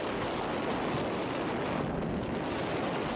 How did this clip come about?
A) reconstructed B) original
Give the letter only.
B